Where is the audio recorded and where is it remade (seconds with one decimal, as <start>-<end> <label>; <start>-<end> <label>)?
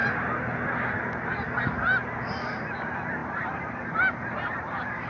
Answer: 0.0-3.2 recorded; 3.2-5.1 remade